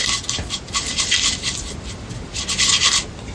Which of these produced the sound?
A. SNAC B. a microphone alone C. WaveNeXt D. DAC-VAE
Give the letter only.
B